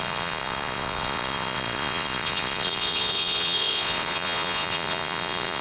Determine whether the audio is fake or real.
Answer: fake